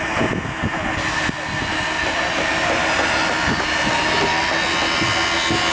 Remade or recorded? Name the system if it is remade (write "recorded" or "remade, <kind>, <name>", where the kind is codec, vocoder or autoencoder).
recorded